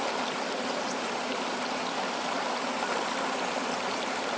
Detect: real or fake real